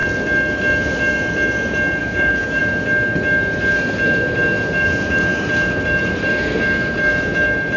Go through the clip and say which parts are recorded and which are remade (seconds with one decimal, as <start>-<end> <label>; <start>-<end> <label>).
0.0-2.0 recorded; 2.0-2.6 remade; 2.6-7.8 recorded